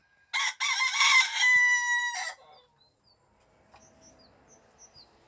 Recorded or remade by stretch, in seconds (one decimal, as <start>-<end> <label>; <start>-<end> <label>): 0.0-5.3 recorded